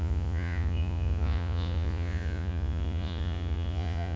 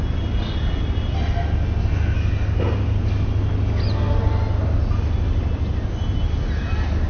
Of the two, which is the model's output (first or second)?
first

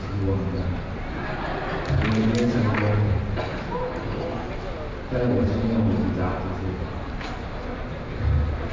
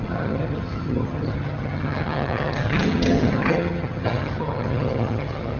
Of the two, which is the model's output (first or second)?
second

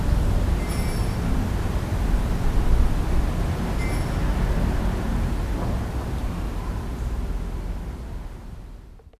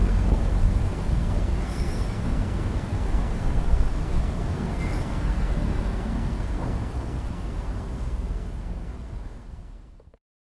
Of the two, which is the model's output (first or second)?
second